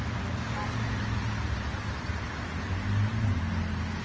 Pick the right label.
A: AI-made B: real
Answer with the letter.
B